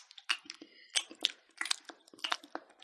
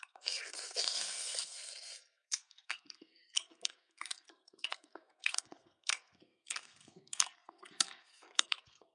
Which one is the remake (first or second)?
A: second